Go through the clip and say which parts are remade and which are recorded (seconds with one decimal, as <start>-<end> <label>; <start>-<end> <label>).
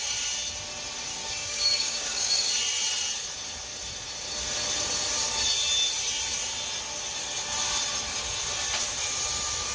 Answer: 0.0-1.1 recorded; 1.1-2.5 remade; 2.5-9.7 recorded